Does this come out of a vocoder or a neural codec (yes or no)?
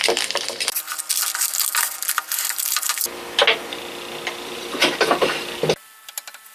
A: no